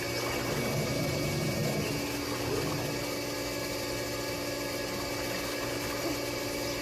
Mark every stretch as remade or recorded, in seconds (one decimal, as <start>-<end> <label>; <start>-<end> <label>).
0.0-6.8 recorded